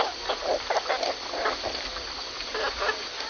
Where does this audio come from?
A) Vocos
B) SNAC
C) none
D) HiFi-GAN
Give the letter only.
C